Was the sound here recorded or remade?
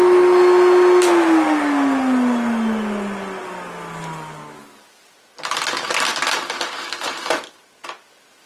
recorded